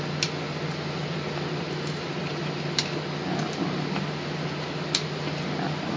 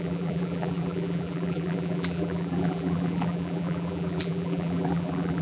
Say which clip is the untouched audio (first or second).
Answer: first